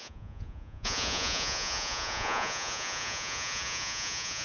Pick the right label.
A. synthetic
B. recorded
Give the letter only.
A